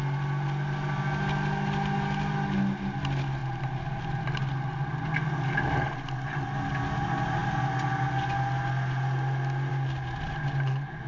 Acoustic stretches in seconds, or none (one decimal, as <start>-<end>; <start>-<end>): 0.0-11.1

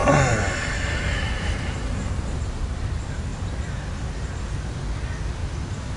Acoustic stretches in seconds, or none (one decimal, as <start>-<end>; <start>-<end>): 2.1-3.3; 4.4-5.4

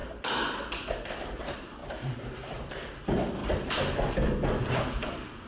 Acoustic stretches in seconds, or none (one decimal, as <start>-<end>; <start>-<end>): 0.0-0.9; 3.4-4.7